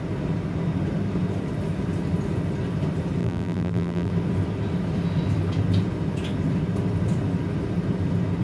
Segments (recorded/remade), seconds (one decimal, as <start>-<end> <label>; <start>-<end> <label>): 0.0-3.2 recorded; 3.2-4.1 remade; 4.1-8.4 recorded